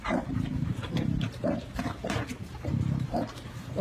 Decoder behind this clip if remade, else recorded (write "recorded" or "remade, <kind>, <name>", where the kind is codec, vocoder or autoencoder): remade, vocoder, BigVGAN v2